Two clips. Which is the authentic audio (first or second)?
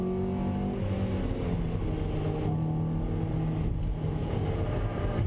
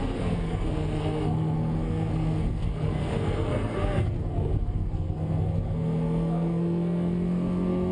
first